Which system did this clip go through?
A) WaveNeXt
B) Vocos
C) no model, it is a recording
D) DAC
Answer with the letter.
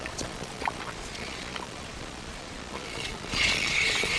B